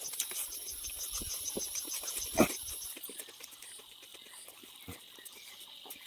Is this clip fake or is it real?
real